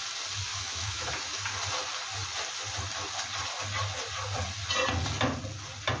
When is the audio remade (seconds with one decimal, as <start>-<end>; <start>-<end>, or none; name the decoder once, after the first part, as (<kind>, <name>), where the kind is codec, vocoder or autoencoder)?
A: 0.5-1.1 (autoencoder, DAC-VAE)